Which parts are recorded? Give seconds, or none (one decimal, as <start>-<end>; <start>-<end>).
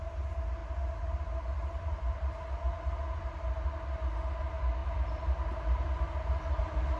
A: 0.0-7.0